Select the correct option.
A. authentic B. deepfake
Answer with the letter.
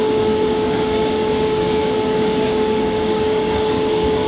B